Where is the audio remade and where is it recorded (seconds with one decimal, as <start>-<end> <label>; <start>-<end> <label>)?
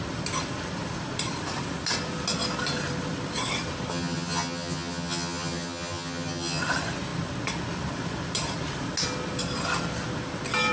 0.0-3.9 recorded; 3.9-6.6 remade; 6.6-10.7 recorded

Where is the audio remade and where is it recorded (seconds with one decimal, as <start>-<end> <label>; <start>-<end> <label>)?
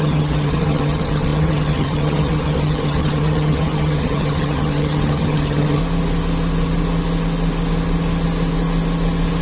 0.0-5.8 remade; 5.8-9.4 recorded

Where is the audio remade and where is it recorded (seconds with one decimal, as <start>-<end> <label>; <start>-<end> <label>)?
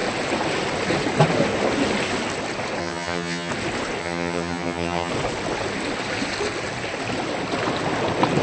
0.0-2.8 recorded; 2.8-3.5 remade; 3.5-4.0 recorded; 4.0-5.1 remade; 5.1-8.4 recorded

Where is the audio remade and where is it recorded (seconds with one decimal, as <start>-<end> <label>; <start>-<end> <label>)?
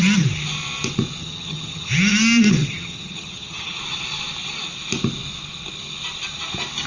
0.0-1.2 recorded; 1.2-1.9 remade; 1.9-2.6 recorded; 2.6-3.8 remade; 3.8-6.9 recorded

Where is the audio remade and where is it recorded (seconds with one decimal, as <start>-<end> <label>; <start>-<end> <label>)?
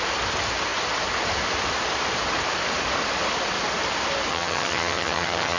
0.0-4.3 recorded; 4.3-5.6 remade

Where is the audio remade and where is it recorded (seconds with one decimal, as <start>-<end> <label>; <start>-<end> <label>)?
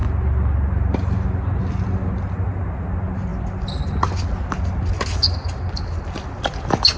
0.0-7.0 recorded